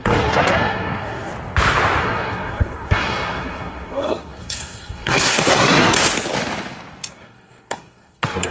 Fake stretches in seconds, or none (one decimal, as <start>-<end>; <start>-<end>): 0.0-1.3; 2.0-6.0; 7.1-8.5